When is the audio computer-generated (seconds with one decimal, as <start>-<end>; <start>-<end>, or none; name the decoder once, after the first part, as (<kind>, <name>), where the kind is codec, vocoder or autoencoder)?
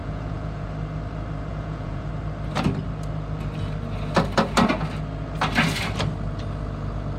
0.0-0.7 (vocoder, Vocos); 1.5-2.1